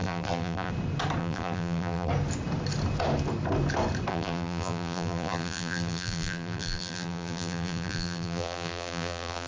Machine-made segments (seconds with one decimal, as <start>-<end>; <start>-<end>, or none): 0.0-0.7; 1.2-2.1; 4.1-9.5